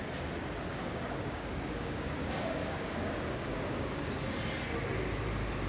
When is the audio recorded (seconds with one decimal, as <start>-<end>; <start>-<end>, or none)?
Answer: 0.0-0.7; 4.1-5.7